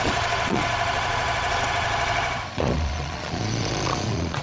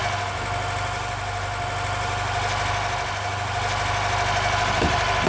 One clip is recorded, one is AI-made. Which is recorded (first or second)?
second